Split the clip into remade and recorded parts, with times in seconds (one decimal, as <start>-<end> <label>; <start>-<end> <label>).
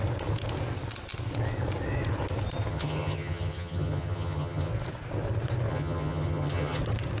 0.0-2.7 recorded; 2.7-4.7 remade; 4.7-5.7 recorded; 5.7-6.8 remade; 6.8-7.2 recorded